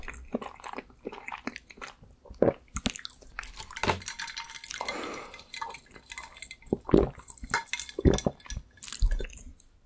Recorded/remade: recorded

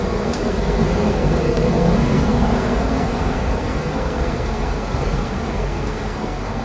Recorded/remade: remade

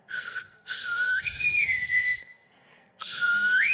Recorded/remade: remade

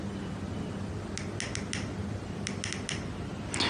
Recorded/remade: recorded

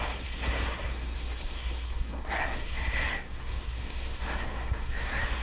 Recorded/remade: remade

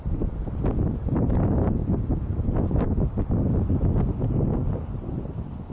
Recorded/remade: recorded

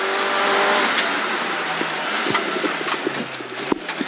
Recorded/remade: recorded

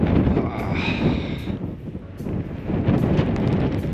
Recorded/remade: recorded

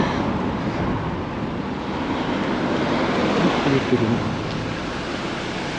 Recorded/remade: recorded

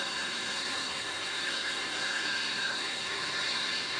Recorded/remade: remade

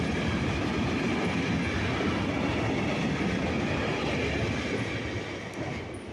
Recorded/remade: recorded